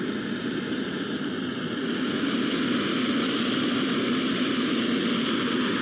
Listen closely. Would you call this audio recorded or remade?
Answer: recorded